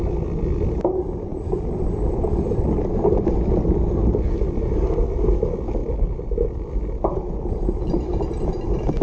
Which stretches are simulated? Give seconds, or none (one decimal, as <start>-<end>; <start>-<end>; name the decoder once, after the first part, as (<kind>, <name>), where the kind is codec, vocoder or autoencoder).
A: 1.3-3.2 (vocoder, BigVGAN v2); 5.8-7.5